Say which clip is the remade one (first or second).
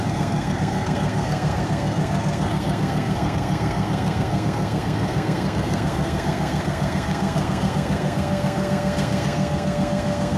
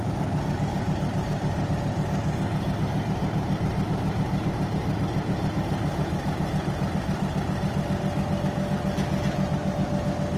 first